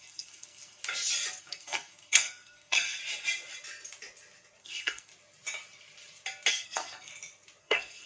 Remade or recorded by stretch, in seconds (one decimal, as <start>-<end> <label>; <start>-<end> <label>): 0.0-0.8 remade; 0.8-1.4 recorded; 1.4-3.0 remade; 3.0-4.6 recorded; 4.6-5.1 remade; 5.1-6.5 recorded; 6.5-7.1 remade; 7.1-7.6 recorded; 7.6-8.1 remade